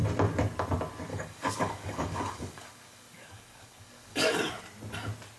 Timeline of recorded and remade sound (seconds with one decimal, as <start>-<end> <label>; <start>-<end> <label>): 0.0-1.1 recorded; 1.1-4.3 remade; 4.3-5.4 recorded